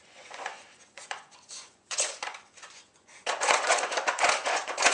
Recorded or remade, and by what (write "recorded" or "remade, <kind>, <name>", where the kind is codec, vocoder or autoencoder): remade, vocoder, Vocos